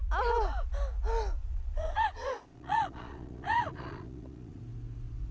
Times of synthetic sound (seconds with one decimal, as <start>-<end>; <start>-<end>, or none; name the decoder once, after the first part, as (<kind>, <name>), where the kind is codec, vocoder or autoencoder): 1.4-4.6 (vocoder, Vocos)